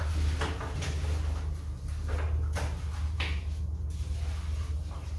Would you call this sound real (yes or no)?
yes